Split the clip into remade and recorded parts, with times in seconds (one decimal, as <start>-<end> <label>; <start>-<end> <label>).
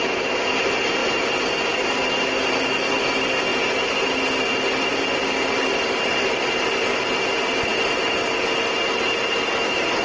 0.0-10.0 recorded